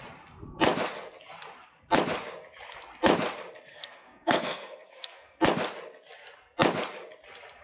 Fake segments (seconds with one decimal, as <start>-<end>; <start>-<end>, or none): 3.7-5.4